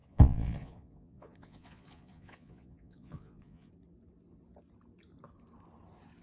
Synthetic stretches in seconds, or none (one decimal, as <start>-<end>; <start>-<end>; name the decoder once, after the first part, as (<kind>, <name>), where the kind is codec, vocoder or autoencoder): 0.0-3.7 (vocoder, Vocos)